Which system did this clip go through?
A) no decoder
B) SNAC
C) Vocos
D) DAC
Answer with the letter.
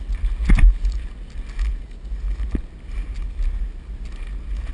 A